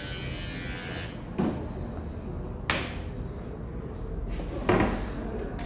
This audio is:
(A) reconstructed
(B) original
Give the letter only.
B